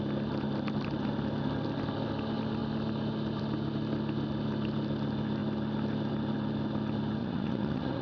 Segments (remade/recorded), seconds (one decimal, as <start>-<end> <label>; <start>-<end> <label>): 0.0-7.2 recorded; 7.2-8.0 remade